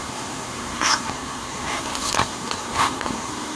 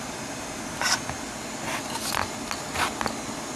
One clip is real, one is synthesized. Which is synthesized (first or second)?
first